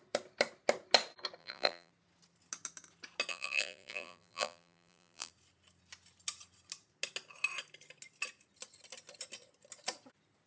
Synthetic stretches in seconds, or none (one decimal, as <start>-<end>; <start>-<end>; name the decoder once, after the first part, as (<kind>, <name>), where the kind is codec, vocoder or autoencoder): 1.4-1.9 (vocoder, BigVGAN v2); 3.3-5.3